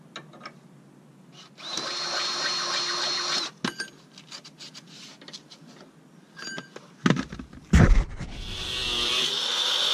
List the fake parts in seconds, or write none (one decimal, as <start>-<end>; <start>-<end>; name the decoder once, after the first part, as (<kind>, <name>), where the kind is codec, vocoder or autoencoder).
none